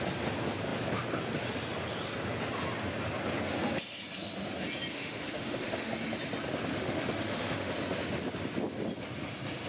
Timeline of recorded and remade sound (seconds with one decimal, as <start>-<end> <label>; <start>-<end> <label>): 0.0-4.9 recorded; 4.9-5.9 remade; 5.9-6.7 recorded; 6.7-7.7 remade; 7.7-9.7 recorded